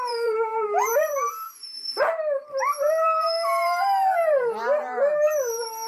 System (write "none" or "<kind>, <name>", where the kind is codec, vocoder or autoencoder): vocoder, BigVGAN v2